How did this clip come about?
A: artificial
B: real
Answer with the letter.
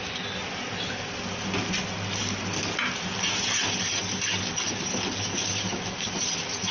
B